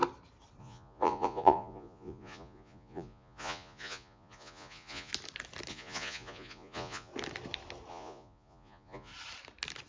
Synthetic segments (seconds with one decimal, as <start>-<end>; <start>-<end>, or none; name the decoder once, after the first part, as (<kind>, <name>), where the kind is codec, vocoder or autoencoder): 0.6-5.1 (vocoder, Vocos); 5.7-7.1; 7.9-9.1